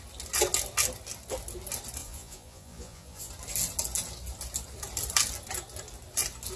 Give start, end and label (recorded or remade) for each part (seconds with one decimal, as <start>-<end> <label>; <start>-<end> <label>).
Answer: 0.0-2.0 recorded; 2.0-3.3 remade; 3.3-6.6 recorded